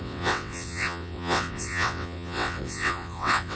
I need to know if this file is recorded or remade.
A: remade